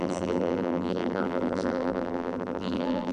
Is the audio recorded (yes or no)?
no